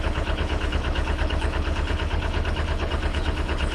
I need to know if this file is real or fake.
fake